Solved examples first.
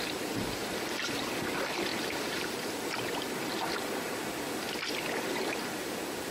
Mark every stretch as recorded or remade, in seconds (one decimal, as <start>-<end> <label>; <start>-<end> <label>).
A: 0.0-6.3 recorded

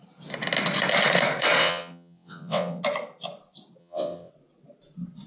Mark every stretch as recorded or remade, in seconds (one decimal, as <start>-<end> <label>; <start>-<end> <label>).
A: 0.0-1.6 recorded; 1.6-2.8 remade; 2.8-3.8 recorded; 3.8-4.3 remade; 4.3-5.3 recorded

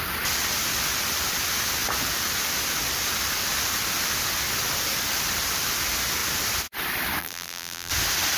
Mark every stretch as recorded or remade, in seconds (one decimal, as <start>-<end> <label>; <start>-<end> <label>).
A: 0.0-7.2 recorded; 7.2-7.9 remade; 7.9-8.4 recorded